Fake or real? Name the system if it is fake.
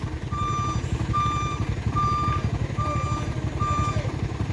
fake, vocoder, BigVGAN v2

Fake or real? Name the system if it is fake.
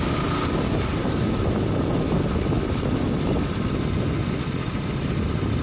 real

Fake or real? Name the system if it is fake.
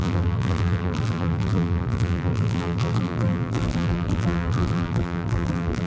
fake, vocoder, BigVGAN v2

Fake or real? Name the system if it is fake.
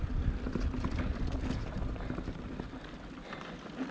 real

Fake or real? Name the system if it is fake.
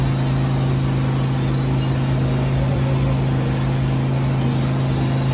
real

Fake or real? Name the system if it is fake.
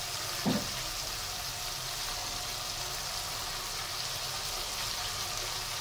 real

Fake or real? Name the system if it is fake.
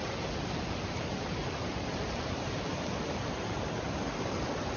fake, vocoder, BigVGAN v2